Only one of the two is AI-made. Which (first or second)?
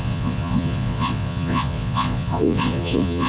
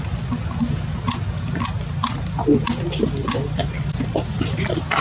first